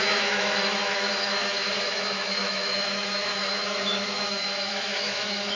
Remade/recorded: remade